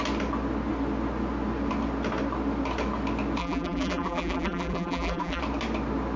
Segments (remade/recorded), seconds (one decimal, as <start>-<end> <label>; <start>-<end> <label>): 0.0-3.4 recorded; 3.4-5.4 remade; 5.4-6.2 recorded